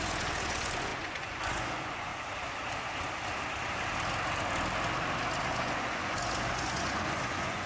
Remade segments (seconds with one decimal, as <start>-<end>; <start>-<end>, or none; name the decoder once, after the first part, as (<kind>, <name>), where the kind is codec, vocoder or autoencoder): 0.0-2.1 (vocoder, Vocos); 5.4-7.7

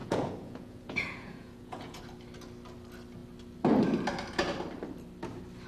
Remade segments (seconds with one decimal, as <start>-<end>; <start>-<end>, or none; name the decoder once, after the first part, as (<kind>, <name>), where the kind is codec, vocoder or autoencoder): 0.0-2.0 (vocoder, Vocos)

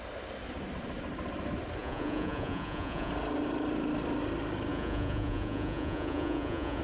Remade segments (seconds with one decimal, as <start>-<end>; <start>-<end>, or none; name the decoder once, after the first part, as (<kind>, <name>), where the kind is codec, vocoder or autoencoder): 1.8-3.1 (vocoder, Vocos); 4.7-6.8

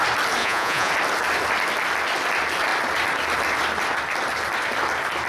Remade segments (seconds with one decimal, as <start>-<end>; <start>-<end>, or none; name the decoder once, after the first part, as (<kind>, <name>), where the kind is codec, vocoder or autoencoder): 0.4-0.9 (vocoder, Vocos)

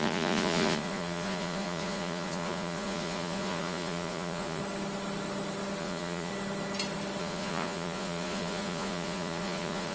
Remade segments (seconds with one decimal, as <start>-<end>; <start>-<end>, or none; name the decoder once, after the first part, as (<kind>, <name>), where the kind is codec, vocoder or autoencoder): 0.0-4.6 (vocoder, Vocos); 5.8-6.3; 7.2-9.9

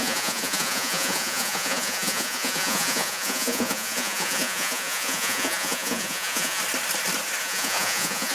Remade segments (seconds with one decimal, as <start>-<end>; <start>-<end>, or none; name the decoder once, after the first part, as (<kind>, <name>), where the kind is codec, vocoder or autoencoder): 0.0-6.6 (vocoder, Vocos); 7.4-8.3

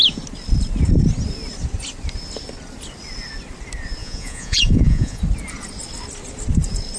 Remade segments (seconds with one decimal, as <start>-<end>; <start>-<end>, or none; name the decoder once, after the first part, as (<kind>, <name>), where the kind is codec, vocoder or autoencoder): 4.0-5.2 (vocoder, Vocos)